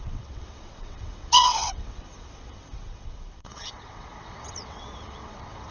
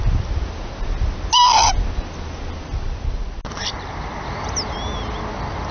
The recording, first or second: second